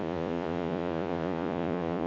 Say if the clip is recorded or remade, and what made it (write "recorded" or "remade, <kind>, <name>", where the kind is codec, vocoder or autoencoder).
remade, vocoder, Vocos